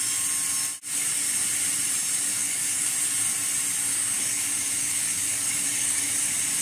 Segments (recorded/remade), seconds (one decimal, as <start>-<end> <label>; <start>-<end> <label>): 0.0-2.3 recorded; 2.3-2.9 remade; 2.9-3.9 recorded; 3.9-6.1 remade; 6.1-6.6 recorded